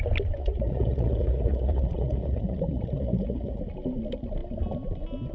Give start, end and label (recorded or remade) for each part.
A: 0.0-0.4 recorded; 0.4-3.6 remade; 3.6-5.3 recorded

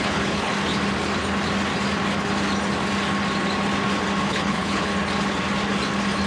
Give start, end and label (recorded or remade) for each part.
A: 0.0-0.5 remade; 0.5-4.3 recorded; 4.3-4.9 remade; 4.9-6.3 recorded